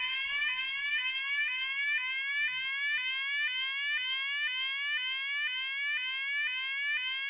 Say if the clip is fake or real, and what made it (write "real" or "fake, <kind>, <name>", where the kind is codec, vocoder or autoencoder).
real